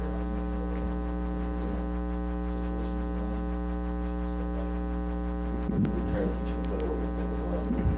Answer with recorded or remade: recorded